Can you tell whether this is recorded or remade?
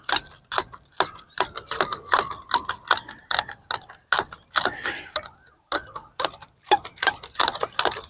recorded